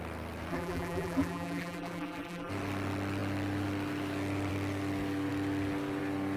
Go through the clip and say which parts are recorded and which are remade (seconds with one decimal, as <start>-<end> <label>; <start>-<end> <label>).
0.0-0.5 recorded; 0.5-2.5 remade; 2.5-6.4 recorded

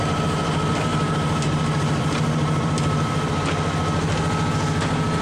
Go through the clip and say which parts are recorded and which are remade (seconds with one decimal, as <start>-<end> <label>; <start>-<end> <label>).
0.0-0.9 recorded; 0.9-3.3 remade; 3.3-5.2 recorded

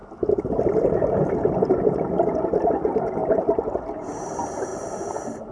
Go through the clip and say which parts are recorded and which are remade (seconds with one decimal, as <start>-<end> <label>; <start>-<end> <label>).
0.0-3.2 recorded; 3.2-3.7 remade; 3.7-4.7 recorded; 4.7-5.5 remade

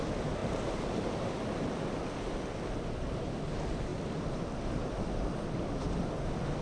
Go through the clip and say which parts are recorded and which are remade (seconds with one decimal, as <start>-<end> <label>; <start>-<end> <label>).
0.0-0.4 recorded; 0.4-1.3 remade; 1.3-6.6 recorded

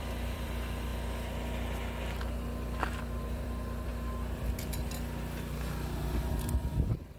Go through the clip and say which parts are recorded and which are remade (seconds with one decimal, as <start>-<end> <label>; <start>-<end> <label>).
0.0-0.9 remade; 0.9-3.0 recorded; 3.0-3.9 remade; 3.9-7.2 recorded

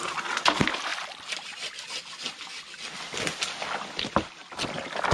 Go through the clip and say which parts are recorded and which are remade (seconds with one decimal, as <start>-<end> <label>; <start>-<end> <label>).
0.0-5.1 recorded

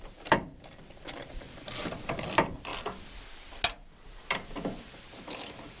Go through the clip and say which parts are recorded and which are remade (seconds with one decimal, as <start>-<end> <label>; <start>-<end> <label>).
0.0-2.7 remade; 2.7-4.8 recorded; 4.8-5.8 remade

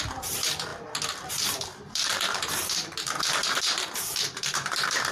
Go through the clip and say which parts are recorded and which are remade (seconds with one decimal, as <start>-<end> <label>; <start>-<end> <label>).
0.0-0.7 remade; 0.7-1.3 recorded; 1.3-5.1 remade